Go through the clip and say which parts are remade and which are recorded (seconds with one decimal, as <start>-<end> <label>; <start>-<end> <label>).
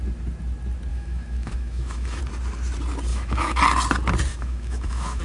0.0-0.9 recorded; 0.9-2.2 remade; 2.2-3.1 recorded; 3.1-3.6 remade; 3.6-4.3 recorded; 4.3-5.2 remade